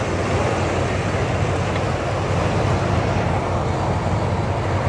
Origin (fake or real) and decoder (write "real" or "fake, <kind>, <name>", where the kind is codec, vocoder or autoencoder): real